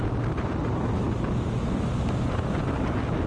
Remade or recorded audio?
recorded